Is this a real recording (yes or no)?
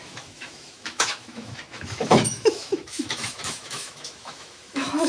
no